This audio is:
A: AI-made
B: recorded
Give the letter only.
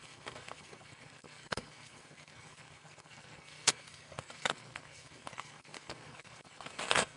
A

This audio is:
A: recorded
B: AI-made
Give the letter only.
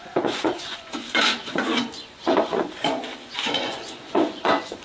B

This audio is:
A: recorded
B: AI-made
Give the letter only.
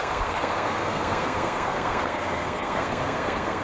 B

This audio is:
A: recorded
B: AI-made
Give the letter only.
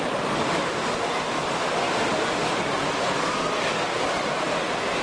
A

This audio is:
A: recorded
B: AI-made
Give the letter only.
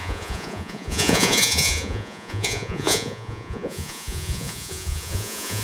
B